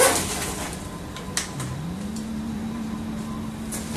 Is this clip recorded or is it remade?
recorded